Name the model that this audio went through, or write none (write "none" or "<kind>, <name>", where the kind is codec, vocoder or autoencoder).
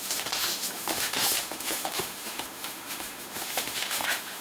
autoencoder, DAC-VAE